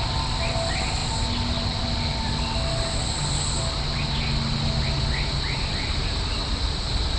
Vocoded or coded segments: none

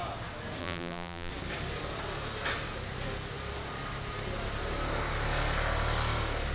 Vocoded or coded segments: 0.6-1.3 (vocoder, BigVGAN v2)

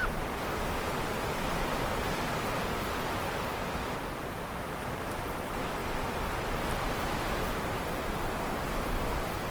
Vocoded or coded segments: none

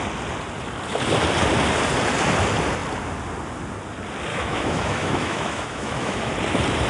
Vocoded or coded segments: 4.3-6.3 (autoencoder, DAC-VAE)